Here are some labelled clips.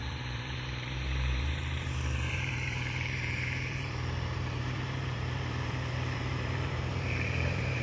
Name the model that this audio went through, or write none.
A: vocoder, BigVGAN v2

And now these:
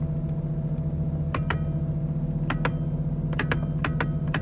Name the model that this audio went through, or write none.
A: none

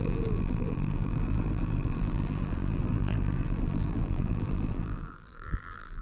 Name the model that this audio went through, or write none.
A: vocoder, BigVGAN v2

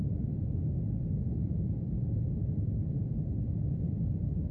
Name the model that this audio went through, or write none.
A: vocoder, BigVGAN v2